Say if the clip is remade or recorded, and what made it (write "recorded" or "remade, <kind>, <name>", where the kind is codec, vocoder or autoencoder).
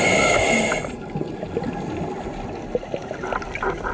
recorded